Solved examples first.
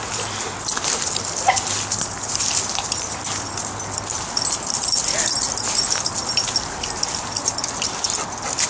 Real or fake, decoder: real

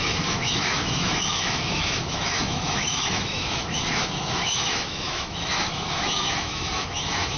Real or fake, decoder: fake, autoencoder, DAC-VAE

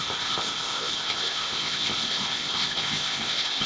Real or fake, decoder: fake, codec, ZipCodec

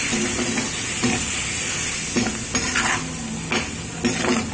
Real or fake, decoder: real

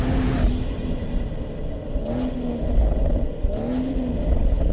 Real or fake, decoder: real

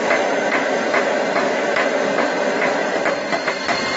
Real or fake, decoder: fake, vocoder, BigVGAN v2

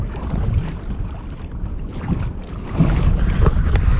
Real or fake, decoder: real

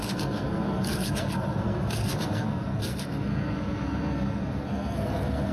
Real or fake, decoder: fake, codec, SNAC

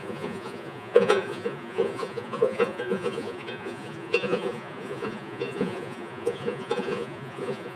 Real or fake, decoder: fake, vocoder, Vocos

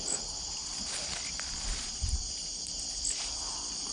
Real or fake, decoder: real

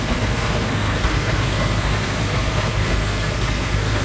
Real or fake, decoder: fake, codec, SNAC